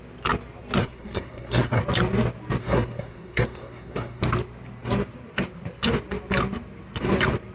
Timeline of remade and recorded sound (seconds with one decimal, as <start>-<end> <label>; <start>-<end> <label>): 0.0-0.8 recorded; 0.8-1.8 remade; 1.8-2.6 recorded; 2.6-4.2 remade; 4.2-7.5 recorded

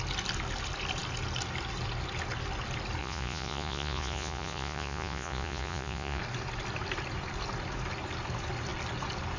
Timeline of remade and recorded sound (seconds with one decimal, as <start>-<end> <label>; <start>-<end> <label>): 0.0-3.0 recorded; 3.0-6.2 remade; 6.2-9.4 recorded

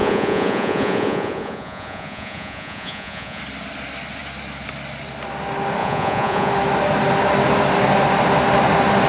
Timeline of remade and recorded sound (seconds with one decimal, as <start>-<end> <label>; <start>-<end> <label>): 0.0-3.4 remade; 3.4-5.8 recorded; 5.8-6.5 remade; 6.5-9.1 recorded